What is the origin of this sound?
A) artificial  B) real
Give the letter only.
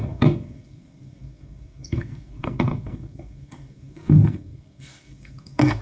A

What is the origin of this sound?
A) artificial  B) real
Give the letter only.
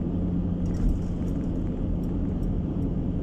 B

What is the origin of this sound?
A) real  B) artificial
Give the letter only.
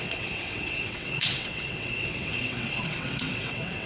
B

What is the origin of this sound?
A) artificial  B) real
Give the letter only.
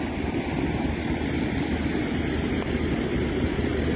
B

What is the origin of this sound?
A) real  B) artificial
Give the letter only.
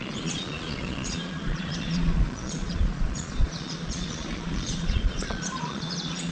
B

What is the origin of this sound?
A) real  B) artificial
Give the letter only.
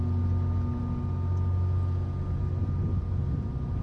A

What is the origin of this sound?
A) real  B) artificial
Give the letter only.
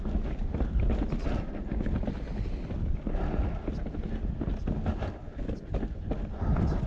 A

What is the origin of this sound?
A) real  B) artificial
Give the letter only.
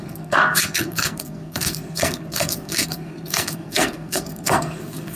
B